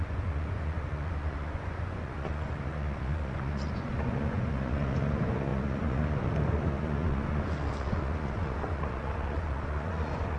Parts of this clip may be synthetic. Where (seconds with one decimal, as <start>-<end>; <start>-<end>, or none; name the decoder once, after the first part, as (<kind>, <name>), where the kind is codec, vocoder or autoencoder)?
0.0-10.4 (vocoder, Vocos)

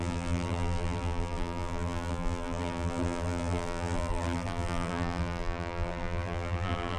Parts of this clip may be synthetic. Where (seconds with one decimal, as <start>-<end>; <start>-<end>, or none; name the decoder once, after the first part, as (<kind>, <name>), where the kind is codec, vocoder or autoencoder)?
0.0-7.0 (vocoder, BigVGAN v2)